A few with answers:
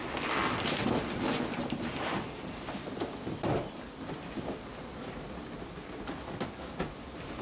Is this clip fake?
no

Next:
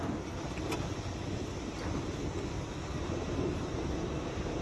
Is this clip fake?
no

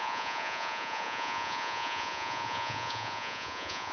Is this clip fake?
yes